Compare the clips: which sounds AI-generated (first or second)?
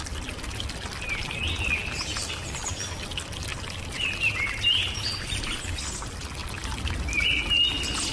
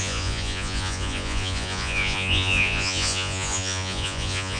second